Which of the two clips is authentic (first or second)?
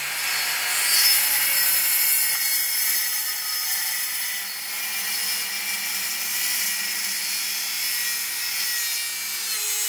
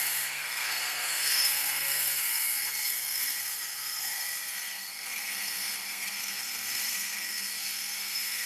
first